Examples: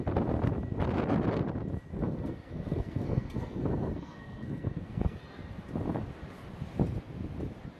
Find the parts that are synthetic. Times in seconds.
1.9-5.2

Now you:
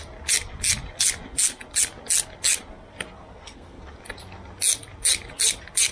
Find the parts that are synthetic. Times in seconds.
3.3-3.8

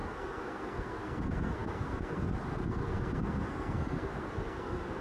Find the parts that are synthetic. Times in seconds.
0.0-5.0